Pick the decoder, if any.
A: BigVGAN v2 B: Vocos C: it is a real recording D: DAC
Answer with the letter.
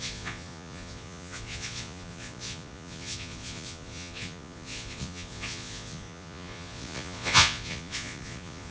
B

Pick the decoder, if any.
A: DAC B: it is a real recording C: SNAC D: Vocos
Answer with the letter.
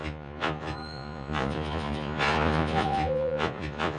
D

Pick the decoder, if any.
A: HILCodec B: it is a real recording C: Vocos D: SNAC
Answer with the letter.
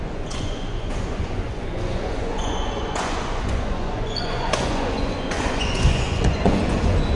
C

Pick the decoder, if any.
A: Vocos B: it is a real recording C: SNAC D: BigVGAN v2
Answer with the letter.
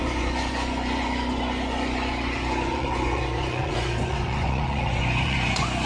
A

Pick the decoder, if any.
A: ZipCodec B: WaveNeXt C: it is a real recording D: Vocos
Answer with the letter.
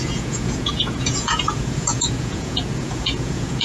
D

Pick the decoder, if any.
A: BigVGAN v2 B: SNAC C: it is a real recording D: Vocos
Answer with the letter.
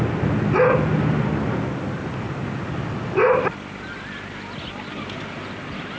C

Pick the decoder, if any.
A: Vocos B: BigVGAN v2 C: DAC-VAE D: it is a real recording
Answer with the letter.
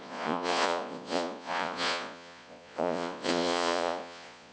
A